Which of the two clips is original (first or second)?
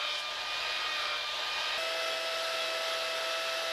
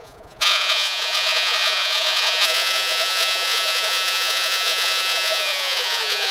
first